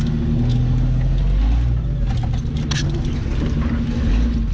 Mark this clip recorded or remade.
recorded